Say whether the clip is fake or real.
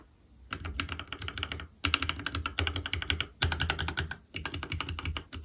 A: real